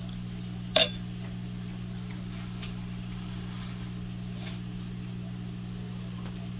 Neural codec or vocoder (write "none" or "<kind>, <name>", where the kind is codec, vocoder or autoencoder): none